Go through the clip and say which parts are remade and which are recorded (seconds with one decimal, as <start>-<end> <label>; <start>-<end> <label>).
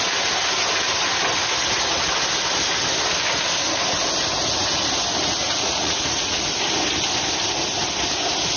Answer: 0.0-5.4 recorded; 5.4-6.4 remade; 6.4-8.6 recorded